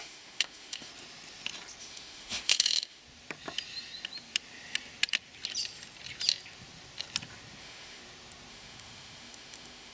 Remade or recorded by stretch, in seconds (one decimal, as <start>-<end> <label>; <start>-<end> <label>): 0.0-0.9 remade; 0.9-1.8 recorded; 1.8-3.0 remade; 3.0-7.6 recorded; 7.6-8.0 remade; 8.0-8.5 recorded; 8.5-9.9 remade